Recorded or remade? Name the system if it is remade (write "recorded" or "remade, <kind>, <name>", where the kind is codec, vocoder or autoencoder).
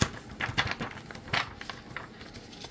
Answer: recorded